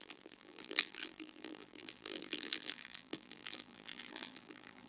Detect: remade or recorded remade